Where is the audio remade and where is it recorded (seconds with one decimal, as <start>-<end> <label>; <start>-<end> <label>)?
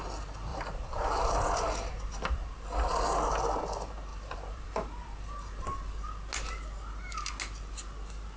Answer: 0.0-0.5 recorded; 0.5-1.3 remade; 1.3-4.1 recorded; 4.1-4.7 remade; 4.7-8.4 recorded